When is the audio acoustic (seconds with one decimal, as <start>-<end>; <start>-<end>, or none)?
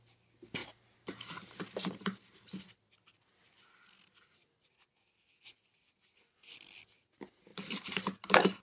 0.0-0.6; 2.4-7.5